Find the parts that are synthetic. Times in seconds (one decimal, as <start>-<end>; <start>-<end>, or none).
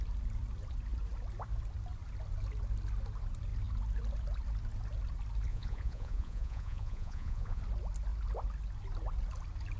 5.5-7.6